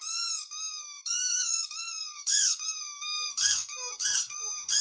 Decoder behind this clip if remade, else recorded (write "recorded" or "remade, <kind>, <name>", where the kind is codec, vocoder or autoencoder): remade, codec, SNAC